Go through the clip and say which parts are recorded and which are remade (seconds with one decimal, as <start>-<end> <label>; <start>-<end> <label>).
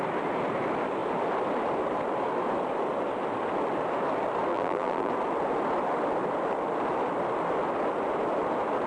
0.0-4.5 recorded; 4.5-5.1 remade; 5.1-8.9 recorded